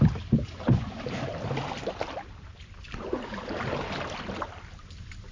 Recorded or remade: recorded